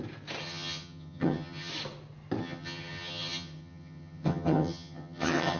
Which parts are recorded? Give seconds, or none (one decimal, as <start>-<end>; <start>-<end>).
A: 0.0-0.4; 1.7-2.4